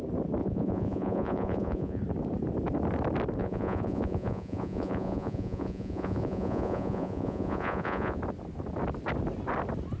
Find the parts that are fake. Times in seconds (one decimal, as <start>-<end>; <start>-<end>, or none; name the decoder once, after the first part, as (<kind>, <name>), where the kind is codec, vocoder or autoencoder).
0.4-2.0 (vocoder, Vocos); 3.4-8.2